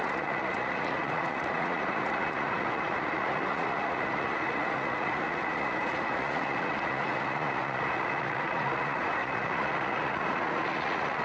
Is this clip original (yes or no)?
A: no